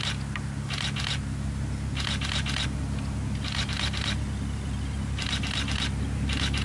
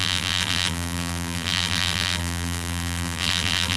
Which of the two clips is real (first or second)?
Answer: first